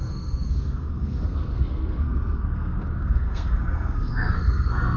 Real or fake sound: fake